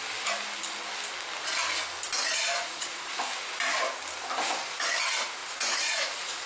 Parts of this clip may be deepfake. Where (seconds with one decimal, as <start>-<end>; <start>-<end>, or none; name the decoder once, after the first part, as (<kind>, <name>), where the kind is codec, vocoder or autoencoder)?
2.6-3.1 (vocoder, Vocos); 5.4-6.5